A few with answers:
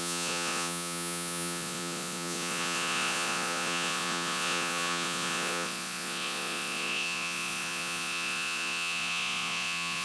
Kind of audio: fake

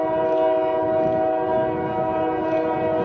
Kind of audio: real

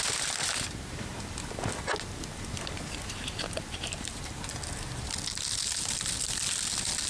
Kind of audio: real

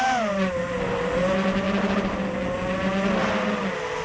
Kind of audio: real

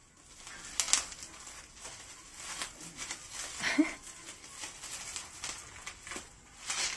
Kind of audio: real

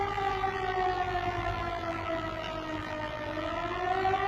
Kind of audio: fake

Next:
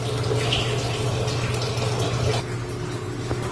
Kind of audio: real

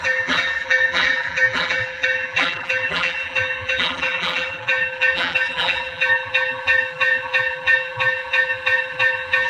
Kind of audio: fake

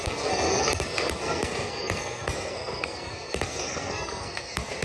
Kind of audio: fake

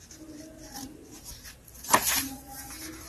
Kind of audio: real